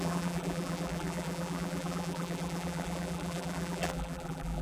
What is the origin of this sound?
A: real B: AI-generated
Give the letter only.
B